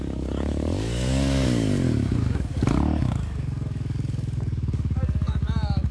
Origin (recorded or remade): remade